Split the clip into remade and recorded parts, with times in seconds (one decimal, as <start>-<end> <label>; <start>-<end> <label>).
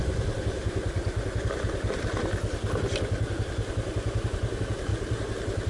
0.0-5.7 recorded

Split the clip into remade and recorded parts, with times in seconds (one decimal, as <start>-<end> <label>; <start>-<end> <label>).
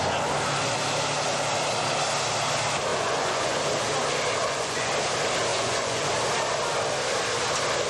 0.0-2.9 recorded; 2.9-3.6 remade; 3.6-4.4 recorded; 4.4-4.9 remade; 4.9-5.5 recorded; 5.5-6.1 remade; 6.1-7.9 recorded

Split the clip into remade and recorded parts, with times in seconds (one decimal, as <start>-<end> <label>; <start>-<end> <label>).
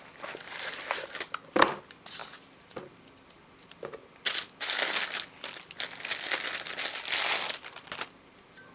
0.0-8.7 recorded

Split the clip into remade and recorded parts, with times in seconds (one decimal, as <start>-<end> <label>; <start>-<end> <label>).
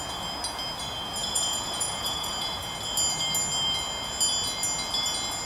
0.0-1.2 recorded; 1.2-2.6 remade; 2.6-5.4 recorded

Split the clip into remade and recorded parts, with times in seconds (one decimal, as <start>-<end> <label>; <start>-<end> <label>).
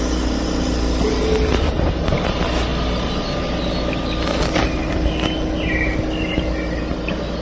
0.0-7.4 recorded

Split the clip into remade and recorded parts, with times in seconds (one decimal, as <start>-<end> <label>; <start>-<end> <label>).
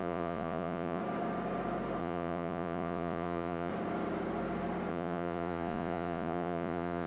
0.0-1.0 remade; 1.0-2.0 recorded; 2.0-3.7 remade; 3.7-4.9 recorded; 4.9-7.1 remade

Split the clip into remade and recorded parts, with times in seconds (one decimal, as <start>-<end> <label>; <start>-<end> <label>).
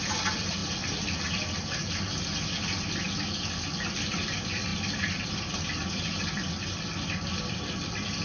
0.0-8.2 recorded